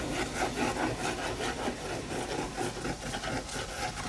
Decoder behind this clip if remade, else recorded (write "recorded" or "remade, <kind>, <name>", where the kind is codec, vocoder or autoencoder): recorded